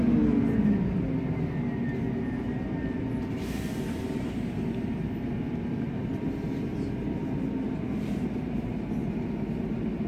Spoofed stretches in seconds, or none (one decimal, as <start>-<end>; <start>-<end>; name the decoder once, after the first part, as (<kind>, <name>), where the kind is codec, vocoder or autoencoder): none